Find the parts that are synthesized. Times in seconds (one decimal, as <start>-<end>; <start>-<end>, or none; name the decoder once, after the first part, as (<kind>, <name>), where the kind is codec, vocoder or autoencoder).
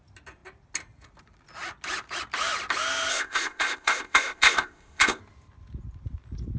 3.1-5.2 (codec, ZipCodec)